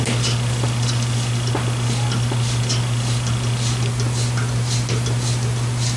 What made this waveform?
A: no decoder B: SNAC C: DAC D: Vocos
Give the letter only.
A